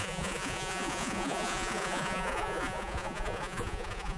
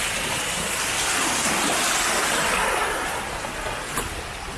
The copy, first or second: first